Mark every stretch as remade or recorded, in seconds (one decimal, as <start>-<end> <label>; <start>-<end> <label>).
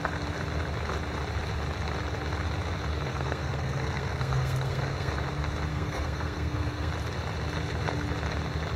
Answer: 0.0-3.1 recorded; 3.1-5.1 remade; 5.1-5.7 recorded; 5.7-6.9 remade; 6.9-8.8 recorded